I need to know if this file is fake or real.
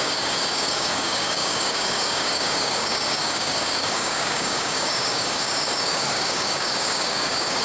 fake